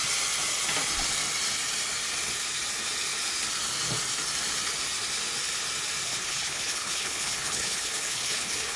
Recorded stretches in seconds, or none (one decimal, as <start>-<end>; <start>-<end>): 0.0-6.1